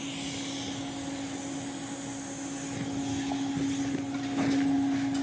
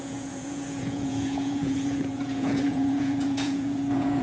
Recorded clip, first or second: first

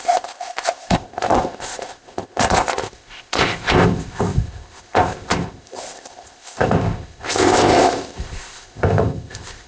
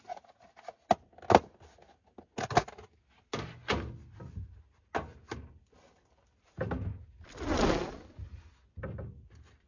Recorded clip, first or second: second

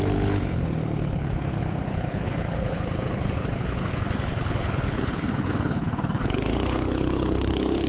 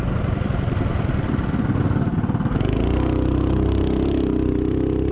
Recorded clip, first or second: second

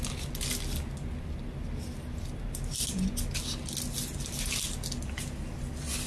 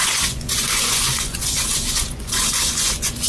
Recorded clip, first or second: first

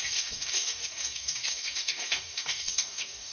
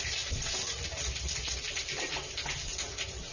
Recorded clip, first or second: second